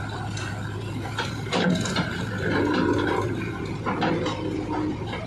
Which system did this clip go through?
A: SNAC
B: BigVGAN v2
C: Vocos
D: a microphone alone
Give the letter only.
D